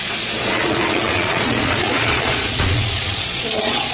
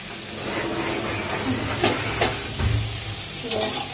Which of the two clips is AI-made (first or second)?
first